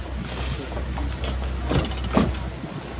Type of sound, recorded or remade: recorded